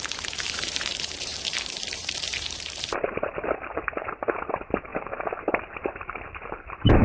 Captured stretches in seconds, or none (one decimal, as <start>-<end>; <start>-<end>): none